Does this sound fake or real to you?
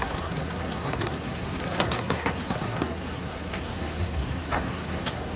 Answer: fake